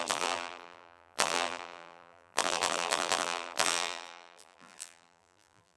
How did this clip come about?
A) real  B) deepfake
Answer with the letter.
B